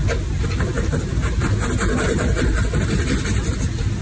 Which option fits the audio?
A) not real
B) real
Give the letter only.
B